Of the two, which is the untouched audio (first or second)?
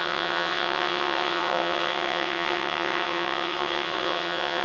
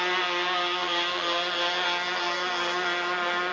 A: second